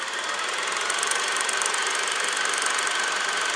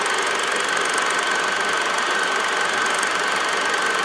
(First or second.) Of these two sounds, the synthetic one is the first